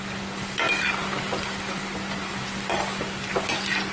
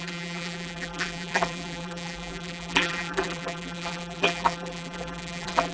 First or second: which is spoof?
second